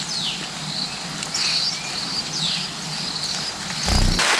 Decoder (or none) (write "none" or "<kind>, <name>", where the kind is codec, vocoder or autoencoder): none